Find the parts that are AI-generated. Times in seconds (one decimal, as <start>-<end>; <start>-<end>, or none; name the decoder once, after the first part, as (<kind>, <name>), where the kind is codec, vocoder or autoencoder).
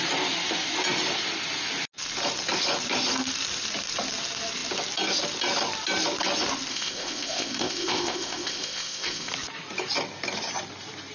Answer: 6.7-9.3 (codec, ZipCodec)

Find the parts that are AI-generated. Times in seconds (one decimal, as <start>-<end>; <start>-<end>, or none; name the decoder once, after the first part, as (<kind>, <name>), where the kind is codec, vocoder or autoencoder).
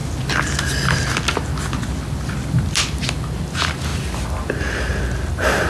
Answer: none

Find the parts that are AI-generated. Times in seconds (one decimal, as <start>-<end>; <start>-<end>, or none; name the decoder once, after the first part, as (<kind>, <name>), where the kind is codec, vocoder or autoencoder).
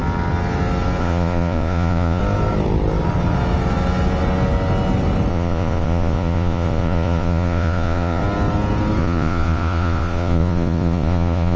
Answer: 1.0-2.2 (vocoder, Vocos); 5.3-8.2; 9.0-11.6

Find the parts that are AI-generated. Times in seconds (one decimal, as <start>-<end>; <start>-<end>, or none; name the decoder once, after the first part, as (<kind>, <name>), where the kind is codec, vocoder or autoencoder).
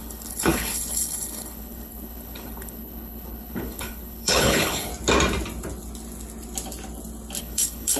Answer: 0.0-4.9 (codec, HILCodec); 7.4-8.0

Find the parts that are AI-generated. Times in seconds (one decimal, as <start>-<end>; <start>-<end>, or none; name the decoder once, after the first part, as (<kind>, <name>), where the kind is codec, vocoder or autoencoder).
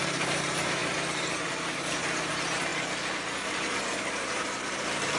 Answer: 0.0-2.7 (vocoder, BigVGAN v2); 3.4-5.2